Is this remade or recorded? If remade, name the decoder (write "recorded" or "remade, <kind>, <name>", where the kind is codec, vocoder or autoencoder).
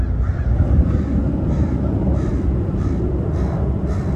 recorded